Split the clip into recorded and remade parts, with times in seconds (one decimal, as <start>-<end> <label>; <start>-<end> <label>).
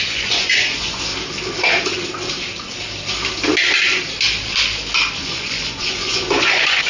0.0-1.1 remade; 1.1-5.2 recorded; 5.2-6.9 remade